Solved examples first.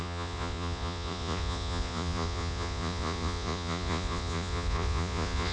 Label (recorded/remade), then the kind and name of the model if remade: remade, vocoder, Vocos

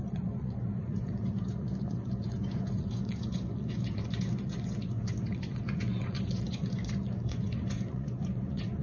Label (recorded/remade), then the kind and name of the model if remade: remade, vocoder, Vocos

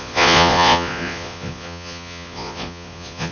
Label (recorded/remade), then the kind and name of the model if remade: remade, vocoder, Vocos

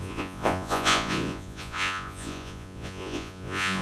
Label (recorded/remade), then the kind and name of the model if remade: remade, vocoder, Vocos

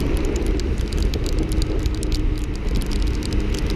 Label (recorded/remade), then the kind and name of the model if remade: recorded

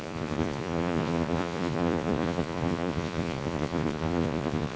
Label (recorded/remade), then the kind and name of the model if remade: remade, vocoder, Vocos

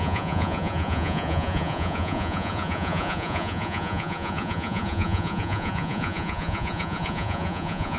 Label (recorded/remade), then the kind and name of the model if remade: remade, vocoder, Vocos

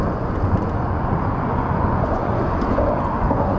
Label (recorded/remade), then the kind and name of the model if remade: remade, vocoder, Vocos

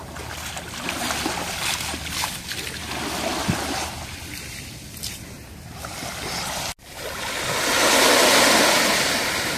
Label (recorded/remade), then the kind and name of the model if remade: recorded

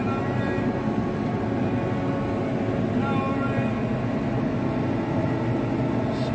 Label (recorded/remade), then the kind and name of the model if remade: recorded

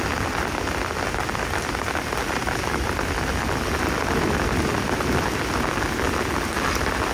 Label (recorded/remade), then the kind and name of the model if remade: recorded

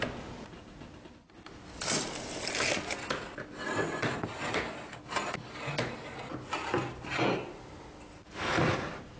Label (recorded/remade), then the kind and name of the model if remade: recorded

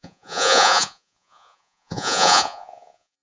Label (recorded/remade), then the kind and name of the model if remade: remade, vocoder, Vocos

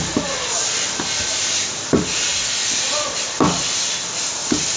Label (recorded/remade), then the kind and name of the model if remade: recorded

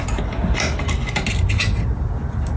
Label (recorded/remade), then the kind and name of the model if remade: recorded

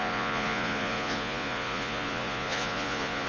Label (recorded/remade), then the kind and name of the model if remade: remade, vocoder, Vocos